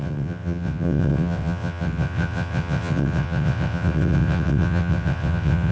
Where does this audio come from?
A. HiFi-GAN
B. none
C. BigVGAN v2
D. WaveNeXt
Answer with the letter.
D